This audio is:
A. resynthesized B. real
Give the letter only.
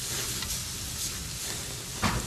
B